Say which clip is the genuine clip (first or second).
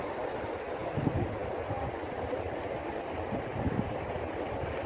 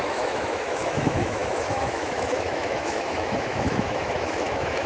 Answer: first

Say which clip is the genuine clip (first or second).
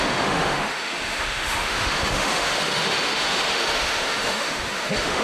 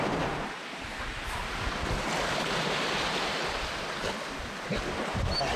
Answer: second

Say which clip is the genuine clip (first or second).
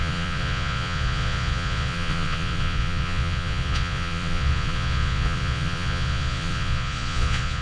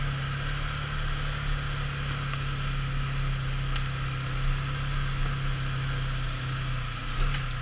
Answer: second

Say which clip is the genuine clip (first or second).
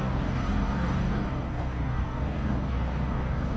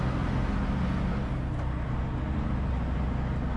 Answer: second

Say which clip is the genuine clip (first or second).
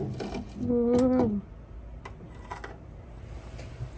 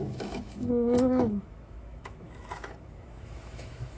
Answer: first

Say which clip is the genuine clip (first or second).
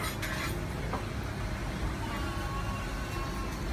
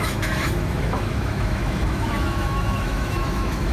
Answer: first